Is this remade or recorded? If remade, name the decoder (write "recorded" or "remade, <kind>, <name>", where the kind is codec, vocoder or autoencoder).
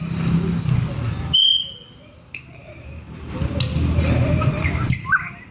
recorded